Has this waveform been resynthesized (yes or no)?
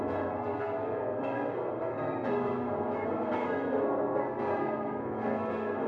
yes